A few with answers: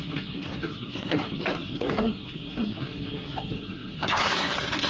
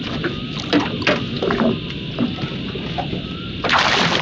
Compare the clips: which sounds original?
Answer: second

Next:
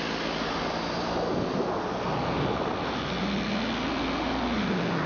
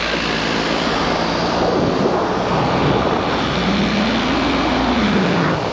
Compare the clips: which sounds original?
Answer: first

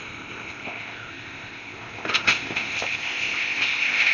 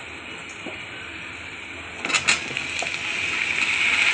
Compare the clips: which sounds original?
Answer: second